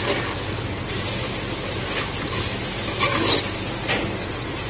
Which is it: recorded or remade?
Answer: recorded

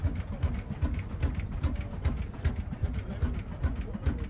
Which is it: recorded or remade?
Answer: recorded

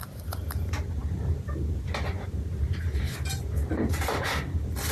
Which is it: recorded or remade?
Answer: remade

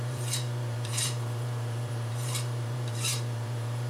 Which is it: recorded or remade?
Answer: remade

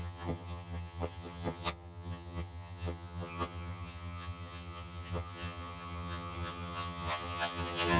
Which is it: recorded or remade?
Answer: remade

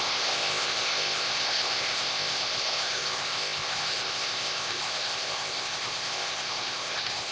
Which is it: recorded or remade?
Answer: remade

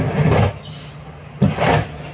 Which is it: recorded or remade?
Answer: recorded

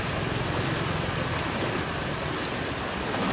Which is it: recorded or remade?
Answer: recorded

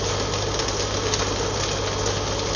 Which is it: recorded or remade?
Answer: recorded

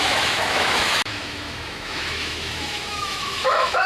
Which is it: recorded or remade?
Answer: remade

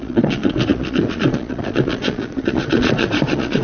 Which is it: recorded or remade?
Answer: remade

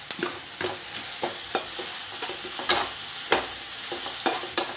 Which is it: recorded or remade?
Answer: recorded